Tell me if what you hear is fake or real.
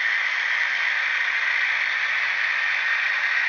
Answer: real